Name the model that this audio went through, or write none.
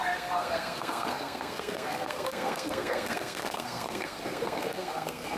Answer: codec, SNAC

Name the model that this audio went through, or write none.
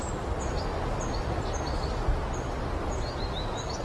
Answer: none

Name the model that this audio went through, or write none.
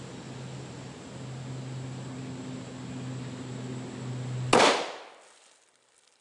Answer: none